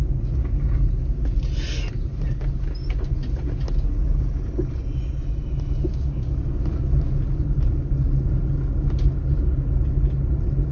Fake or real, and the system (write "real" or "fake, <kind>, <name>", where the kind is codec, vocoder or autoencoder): real